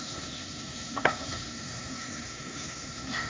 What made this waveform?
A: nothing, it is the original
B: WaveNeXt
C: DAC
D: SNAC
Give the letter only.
D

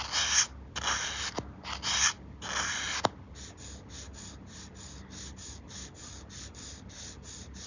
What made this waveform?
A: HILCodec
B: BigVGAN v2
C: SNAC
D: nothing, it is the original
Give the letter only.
D